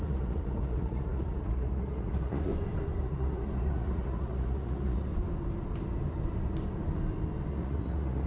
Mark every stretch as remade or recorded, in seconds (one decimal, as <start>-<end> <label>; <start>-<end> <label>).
0.0-2.5 remade; 2.5-3.0 recorded; 3.0-5.1 remade; 5.1-7.5 recorded; 7.5-8.3 remade